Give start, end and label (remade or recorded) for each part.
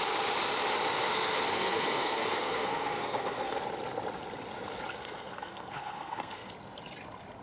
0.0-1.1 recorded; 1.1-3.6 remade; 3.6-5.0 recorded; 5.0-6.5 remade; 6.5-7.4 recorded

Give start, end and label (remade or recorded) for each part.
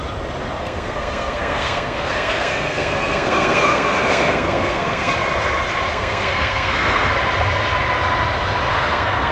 0.0-0.6 recorded; 0.6-5.1 remade; 5.1-5.9 recorded; 5.9-7.1 remade; 7.1-8.7 recorded; 8.7-9.3 remade